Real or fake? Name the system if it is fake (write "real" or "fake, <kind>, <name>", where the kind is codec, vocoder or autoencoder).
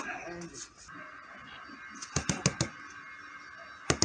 real